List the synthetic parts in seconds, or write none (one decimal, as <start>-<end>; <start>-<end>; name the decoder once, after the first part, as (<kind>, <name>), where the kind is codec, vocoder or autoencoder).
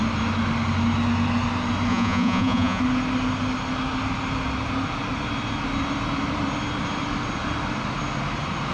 1.9-2.8 (vocoder, Vocos)